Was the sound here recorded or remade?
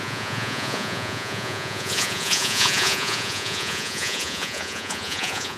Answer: remade